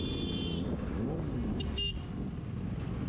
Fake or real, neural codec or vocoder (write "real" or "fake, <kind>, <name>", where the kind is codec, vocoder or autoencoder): real